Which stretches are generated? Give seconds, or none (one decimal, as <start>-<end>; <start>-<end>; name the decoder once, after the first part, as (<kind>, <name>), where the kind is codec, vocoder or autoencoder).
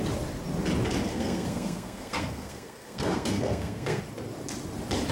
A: 1.1-4.0 (codec, SNAC)